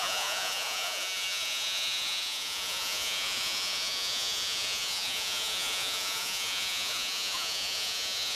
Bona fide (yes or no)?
no